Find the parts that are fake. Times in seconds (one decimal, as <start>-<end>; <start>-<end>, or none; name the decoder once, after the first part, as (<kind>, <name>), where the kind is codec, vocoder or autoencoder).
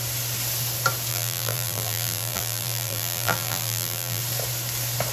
1.1-4.2 (vocoder, BigVGAN v2)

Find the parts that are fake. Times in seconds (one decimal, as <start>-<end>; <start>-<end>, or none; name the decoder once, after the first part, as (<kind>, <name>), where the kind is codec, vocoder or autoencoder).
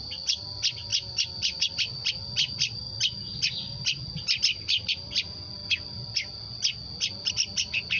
none